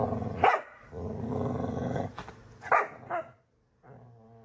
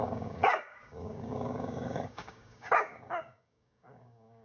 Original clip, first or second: first